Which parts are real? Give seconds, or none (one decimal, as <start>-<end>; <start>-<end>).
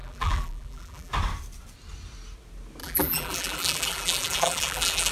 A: 1.1-2.8